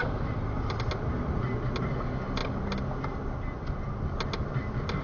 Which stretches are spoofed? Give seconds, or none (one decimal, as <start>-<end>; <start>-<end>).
none